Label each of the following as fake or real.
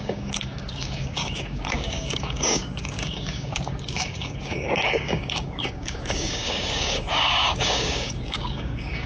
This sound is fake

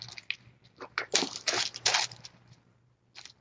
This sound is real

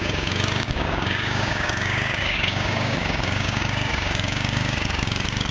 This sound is fake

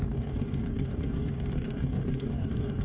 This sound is fake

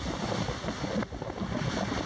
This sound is real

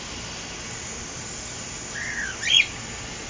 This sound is real